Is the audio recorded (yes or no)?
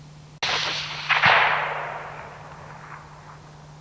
yes